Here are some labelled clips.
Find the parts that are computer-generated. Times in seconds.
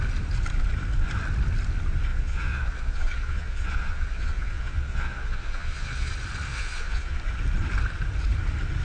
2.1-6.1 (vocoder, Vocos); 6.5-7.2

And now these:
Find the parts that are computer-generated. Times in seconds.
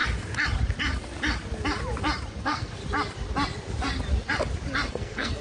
2.4-2.8 (codec, SNAC); 4.9-5.4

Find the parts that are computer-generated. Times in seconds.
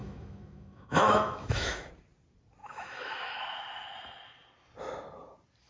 0.0-1.9 (autoencoder, DAC-VAE); 2.6-3.4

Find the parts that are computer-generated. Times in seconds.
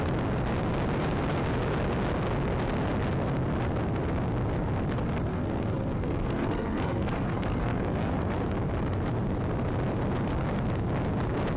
5.3-8.3 (codec, SNAC)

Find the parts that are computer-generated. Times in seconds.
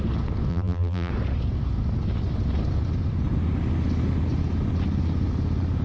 0.5-1.1 (vocoder, BigVGAN v2)